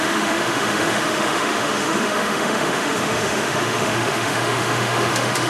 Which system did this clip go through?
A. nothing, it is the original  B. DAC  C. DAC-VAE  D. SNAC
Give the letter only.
C